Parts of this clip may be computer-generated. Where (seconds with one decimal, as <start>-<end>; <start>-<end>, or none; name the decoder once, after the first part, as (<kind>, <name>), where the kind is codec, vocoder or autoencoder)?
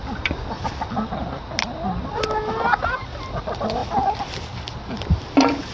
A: none